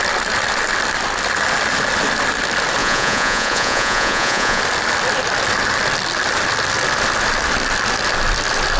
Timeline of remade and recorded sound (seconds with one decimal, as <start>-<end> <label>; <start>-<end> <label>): 0.0-2.8 recorded; 2.8-4.6 remade; 4.6-8.8 recorded